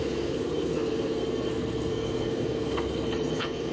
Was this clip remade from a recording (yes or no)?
yes